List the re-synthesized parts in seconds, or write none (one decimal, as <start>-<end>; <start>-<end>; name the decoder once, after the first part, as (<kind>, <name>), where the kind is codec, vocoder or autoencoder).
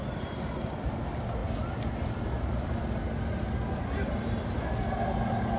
none